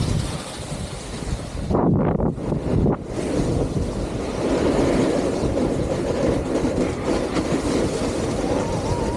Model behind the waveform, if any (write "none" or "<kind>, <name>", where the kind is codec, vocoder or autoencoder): none